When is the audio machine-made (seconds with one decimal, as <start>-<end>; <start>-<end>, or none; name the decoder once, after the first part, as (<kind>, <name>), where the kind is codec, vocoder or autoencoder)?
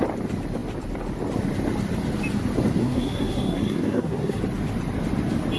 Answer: 2.8-4.4 (codec, SNAC)